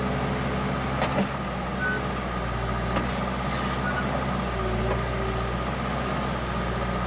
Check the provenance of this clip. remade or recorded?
recorded